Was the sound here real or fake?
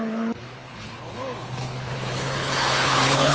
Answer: fake